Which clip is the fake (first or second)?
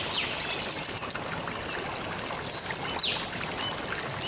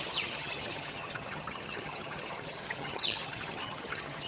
second